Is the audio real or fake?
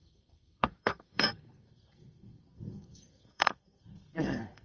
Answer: fake